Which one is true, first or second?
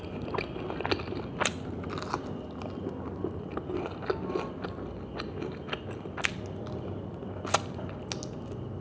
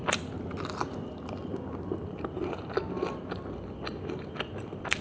first